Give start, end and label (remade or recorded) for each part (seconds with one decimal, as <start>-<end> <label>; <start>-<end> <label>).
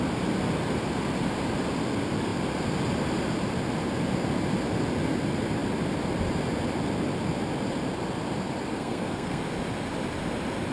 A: 0.0-8.7 recorded; 8.7-9.4 remade; 9.4-10.7 recorded